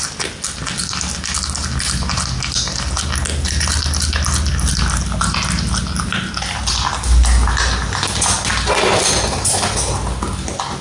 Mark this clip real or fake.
real